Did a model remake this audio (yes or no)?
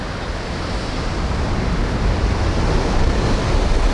no